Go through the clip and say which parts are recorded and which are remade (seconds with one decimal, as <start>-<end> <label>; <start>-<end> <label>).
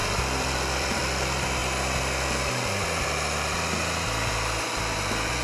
0.0-1.0 remade; 1.0-5.4 recorded